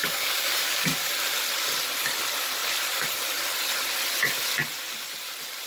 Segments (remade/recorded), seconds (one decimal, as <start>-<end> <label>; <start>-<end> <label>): 0.0-1.1 remade; 1.1-5.7 recorded